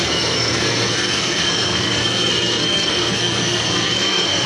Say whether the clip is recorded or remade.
remade